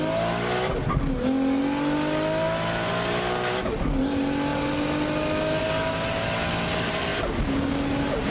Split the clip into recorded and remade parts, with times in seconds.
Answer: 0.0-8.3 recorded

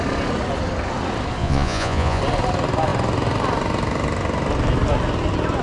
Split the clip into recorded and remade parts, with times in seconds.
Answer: 0.0-1.4 recorded; 1.4-2.2 remade; 2.2-5.6 recorded

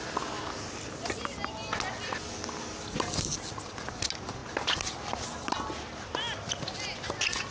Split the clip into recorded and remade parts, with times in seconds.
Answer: 0.0-7.5 recorded

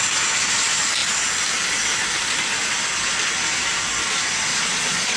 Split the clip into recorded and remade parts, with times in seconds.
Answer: 0.0-4.5 recorded; 4.5-5.2 remade

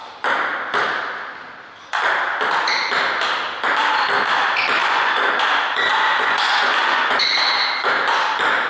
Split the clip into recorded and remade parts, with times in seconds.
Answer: 0.0-4.8 recorded; 4.8-5.4 remade; 5.4-5.9 recorded; 5.9-7.2 remade; 7.2-8.7 recorded

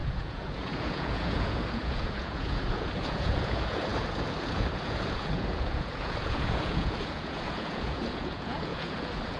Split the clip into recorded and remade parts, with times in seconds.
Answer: 0.0-9.4 remade

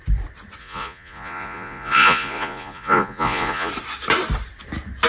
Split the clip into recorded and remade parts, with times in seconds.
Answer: 0.0-0.6 recorded; 0.6-3.7 remade; 3.7-5.1 recorded

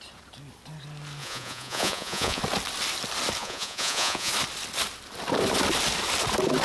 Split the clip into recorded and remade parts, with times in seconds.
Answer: 0.0-1.2 recorded; 1.2-2.4 remade; 2.4-3.4 recorded; 3.4-4.3 remade; 4.3-6.6 recorded